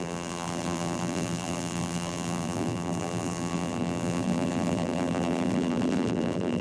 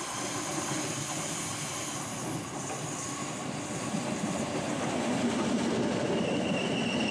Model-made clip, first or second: first